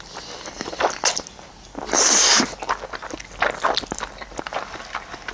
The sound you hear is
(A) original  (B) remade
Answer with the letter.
A